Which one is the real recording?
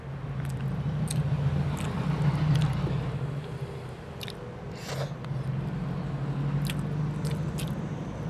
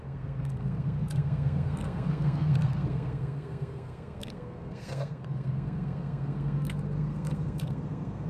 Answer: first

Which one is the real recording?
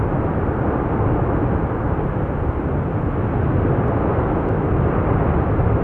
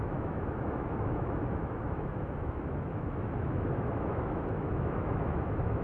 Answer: first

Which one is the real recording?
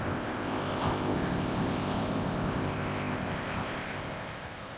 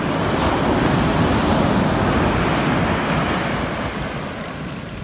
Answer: second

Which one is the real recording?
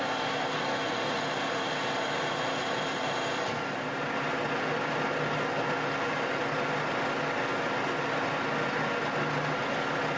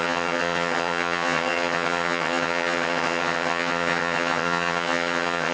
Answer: first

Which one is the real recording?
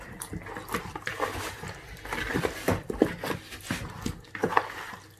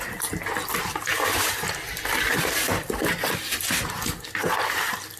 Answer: first